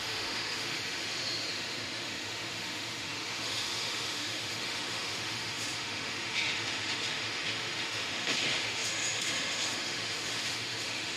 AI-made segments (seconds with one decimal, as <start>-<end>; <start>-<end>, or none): 0.0-11.2